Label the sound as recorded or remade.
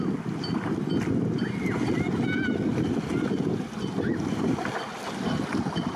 recorded